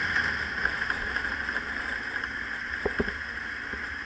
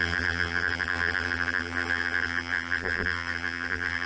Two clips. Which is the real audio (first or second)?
first